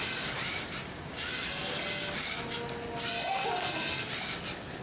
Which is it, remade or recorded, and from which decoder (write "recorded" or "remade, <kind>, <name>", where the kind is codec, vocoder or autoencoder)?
recorded